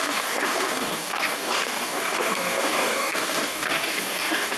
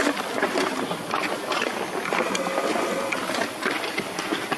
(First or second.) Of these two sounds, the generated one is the first